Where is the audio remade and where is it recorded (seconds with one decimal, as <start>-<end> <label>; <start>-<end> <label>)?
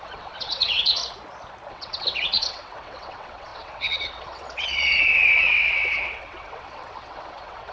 0.0-1.0 remade; 1.0-1.7 recorded; 1.7-7.7 remade